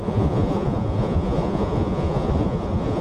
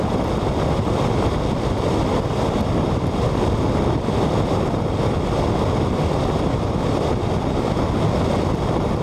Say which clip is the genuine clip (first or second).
second